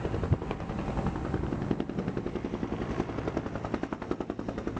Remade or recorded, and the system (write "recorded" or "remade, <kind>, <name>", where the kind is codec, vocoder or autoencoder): recorded